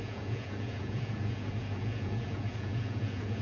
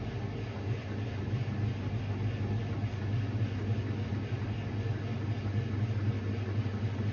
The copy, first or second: first